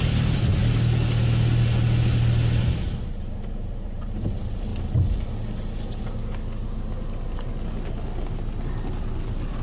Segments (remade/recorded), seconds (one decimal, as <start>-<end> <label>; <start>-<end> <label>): 0.0-0.6 remade; 0.6-2.6 recorded; 2.6-4.7 remade; 4.7-9.1 recorded; 9.1-9.6 remade